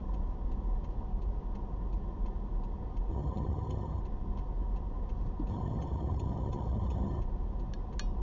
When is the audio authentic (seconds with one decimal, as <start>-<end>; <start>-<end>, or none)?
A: 0.0-3.1; 4.0-5.5; 7.2-8.2